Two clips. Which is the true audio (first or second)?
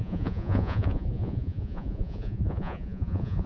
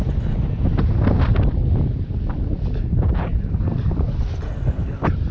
second